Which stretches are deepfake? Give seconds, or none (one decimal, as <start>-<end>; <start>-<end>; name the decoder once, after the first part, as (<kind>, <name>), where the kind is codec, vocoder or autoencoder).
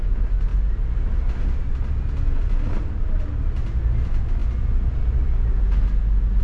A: none